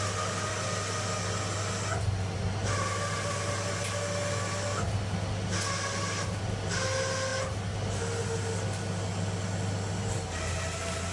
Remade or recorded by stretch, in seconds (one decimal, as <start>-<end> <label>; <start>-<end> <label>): 0.0-11.1 recorded